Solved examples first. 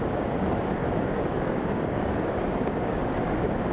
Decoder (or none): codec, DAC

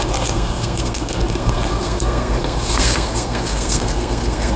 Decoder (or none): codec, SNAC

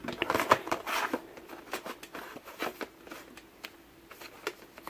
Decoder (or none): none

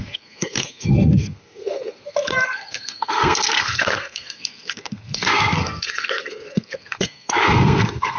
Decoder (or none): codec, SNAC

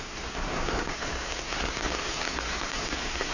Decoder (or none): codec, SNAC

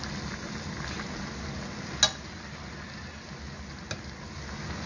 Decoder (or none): none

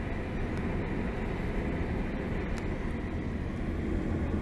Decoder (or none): none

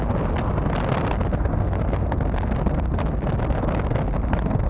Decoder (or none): none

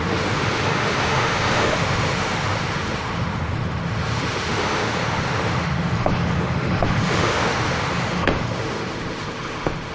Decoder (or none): autoencoder, DAC-VAE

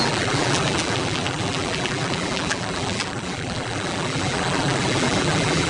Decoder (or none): vocoder, BigVGAN v2